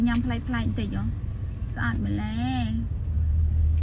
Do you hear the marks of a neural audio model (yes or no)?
no